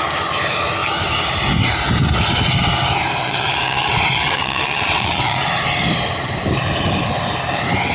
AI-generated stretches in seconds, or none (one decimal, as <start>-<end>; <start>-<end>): 3.2-5.4